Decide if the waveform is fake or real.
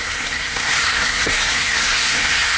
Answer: fake